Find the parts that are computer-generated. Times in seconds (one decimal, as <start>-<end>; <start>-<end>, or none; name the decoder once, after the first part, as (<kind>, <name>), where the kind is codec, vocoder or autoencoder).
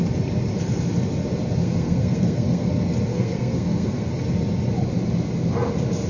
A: 1.6-2.7 (codec, SNAC); 3.1-4.1